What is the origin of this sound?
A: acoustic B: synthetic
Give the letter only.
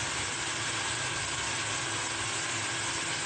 A